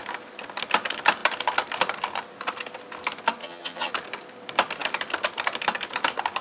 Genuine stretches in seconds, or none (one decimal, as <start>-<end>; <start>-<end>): 0.0-3.4; 3.9-6.4